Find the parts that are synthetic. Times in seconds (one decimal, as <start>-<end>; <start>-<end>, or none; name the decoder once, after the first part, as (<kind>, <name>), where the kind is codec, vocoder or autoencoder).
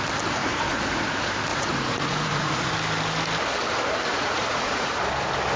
0.4-1.0 (vocoder, Vocos); 1.5-2.7; 4.1-4.9